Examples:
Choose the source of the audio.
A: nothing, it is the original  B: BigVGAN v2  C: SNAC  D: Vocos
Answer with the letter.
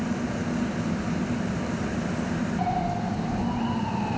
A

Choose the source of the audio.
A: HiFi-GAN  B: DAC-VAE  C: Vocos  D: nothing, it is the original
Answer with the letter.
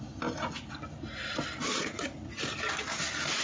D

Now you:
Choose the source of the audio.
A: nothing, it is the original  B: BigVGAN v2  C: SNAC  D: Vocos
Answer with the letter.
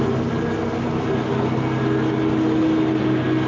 A